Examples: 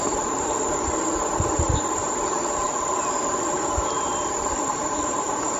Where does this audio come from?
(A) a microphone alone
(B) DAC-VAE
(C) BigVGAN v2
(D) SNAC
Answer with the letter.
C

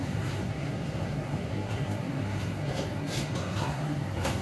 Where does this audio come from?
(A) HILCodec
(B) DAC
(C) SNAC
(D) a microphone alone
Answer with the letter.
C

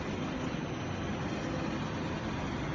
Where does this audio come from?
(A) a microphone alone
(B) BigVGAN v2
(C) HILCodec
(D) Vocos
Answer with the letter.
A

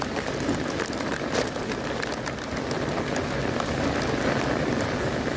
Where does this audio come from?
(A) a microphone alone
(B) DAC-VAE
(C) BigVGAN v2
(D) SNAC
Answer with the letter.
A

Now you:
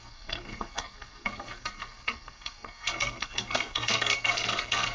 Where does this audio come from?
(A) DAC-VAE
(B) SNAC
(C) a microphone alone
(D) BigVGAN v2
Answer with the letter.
B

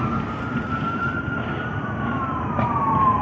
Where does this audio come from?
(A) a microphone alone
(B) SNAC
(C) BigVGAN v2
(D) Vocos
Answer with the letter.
C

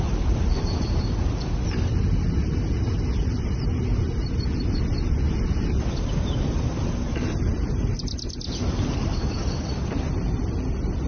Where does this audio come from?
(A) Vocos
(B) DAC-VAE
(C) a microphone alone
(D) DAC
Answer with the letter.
C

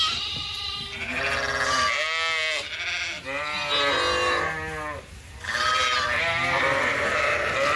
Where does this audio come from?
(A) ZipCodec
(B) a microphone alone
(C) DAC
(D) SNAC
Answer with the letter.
B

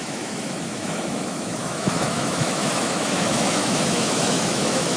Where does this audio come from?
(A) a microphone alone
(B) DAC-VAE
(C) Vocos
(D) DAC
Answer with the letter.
B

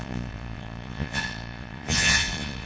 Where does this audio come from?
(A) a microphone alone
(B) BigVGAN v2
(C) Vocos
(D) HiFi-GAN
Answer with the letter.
C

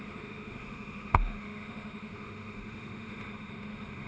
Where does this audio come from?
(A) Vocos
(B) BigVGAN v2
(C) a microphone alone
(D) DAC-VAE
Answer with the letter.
D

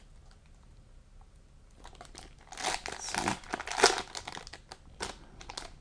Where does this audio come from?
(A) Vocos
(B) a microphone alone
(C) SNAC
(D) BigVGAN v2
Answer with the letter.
B